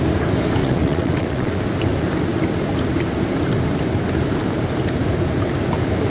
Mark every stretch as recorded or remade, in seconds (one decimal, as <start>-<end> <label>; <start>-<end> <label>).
0.0-0.6 recorded; 0.6-1.6 remade; 1.6-6.1 recorded